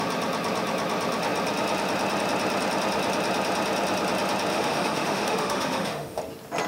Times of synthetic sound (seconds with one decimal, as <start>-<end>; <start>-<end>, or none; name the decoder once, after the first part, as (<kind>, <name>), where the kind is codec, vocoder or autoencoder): 4.5-6.2 (autoencoder, DAC-VAE)